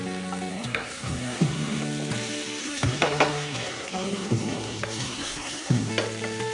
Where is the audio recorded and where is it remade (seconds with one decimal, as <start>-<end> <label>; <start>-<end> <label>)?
0.0-0.5 recorded; 0.5-1.8 remade; 1.8-2.6 recorded; 2.6-5.9 remade; 5.9-6.5 recorded